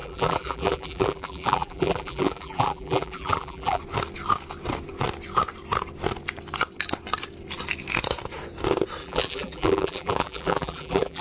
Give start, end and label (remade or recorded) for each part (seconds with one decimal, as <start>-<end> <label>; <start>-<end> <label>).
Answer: 0.0-3.8 remade; 3.8-9.0 recorded; 9.0-11.2 remade